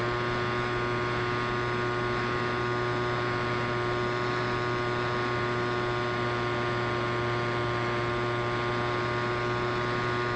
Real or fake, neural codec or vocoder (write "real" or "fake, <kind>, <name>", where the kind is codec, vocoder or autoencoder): real